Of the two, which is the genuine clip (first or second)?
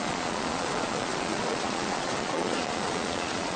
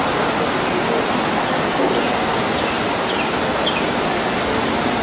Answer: second